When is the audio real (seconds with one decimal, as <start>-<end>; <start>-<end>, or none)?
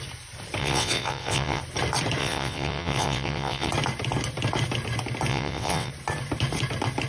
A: 0.0-0.6; 1.6-2.2; 3.7-5.3; 5.9-7.1